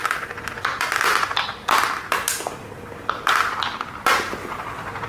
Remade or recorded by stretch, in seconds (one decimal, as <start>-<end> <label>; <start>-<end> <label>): 0.0-3.1 remade; 3.1-5.1 recorded